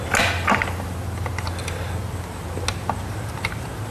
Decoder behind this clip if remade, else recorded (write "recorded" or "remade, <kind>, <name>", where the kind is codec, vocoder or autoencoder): recorded